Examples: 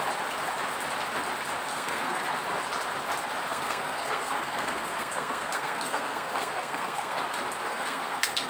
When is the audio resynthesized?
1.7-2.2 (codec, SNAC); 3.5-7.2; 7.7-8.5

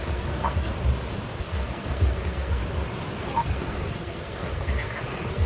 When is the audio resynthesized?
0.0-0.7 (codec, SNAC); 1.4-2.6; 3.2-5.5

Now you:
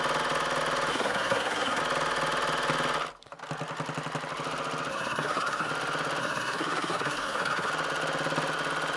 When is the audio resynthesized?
0.9-1.8 (codec, SNAC); 4.9-5.7; 6.2-7.7